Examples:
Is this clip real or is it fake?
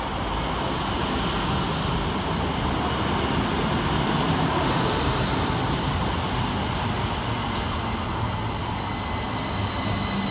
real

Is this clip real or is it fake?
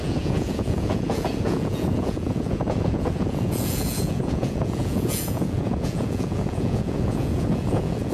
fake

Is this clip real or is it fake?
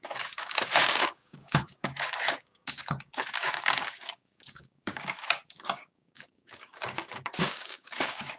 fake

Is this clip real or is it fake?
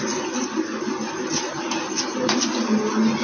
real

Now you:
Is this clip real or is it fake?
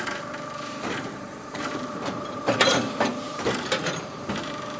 fake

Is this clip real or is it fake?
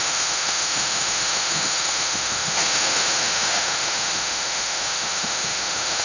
fake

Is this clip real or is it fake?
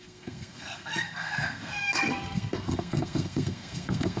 fake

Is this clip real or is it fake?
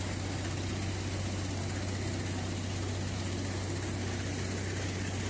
real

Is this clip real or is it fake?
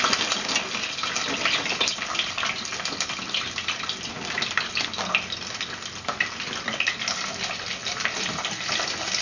real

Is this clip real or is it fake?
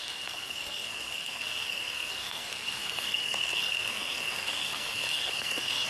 fake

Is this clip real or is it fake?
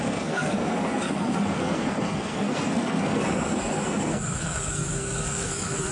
fake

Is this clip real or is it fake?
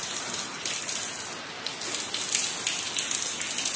real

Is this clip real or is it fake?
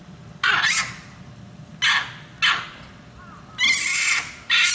real